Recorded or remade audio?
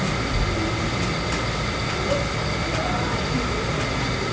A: recorded